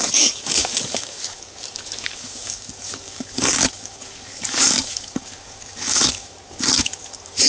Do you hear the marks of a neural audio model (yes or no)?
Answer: yes